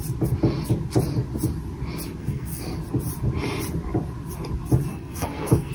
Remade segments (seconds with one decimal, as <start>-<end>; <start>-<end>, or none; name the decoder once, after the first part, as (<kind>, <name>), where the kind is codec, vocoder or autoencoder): 2.2-2.8 (codec, SNAC); 4.9-5.7